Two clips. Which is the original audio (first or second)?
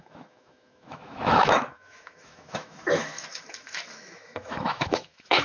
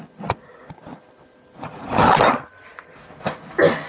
second